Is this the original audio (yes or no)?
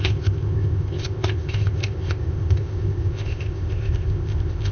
no